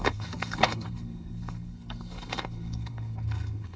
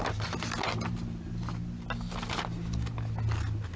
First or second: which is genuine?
second